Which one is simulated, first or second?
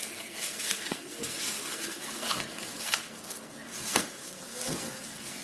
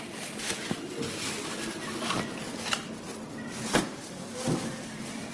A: first